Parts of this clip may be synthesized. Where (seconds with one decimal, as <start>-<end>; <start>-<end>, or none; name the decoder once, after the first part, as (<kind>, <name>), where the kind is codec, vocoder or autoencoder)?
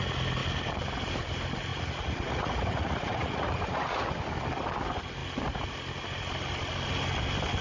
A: 1.7-4.0 (vocoder, Vocos)